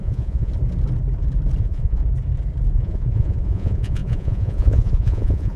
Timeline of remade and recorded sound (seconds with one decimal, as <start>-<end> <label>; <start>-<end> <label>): 0.0-0.5 remade; 0.5-1.6 recorded; 1.6-2.0 remade; 2.0-2.7 recorded; 2.7-5.6 remade